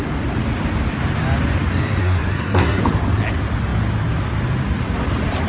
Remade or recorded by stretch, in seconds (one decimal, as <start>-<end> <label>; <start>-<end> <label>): 0.0-2.0 recorded; 2.0-2.8 remade; 2.8-5.5 recorded